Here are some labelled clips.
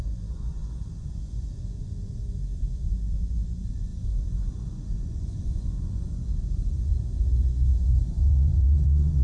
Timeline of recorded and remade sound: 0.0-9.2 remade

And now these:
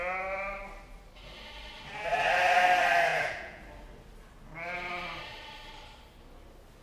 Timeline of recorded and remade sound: 0.0-3.1 recorded; 3.1-3.6 remade; 3.6-6.8 recorded

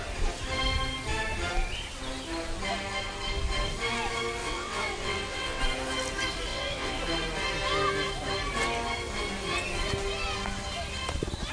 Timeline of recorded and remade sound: 0.0-4.4 recorded; 4.4-5.6 remade; 5.6-6.5 recorded; 6.5-7.0 remade; 7.0-11.5 recorded

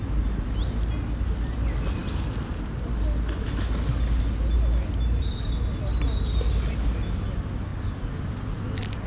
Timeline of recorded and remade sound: 0.0-9.1 recorded